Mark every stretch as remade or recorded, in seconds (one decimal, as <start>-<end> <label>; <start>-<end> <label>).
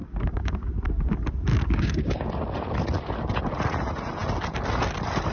0.0-0.7 remade; 0.7-1.5 recorded; 1.5-2.3 remade; 2.3-5.3 recorded